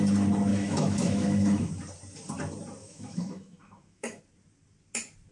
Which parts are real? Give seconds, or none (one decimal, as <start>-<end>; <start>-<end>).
0.0-0.5; 1.7-2.8; 4.2-5.3